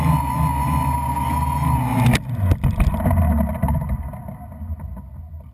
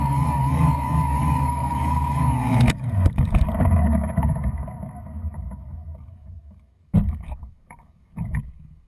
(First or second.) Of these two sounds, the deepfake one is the second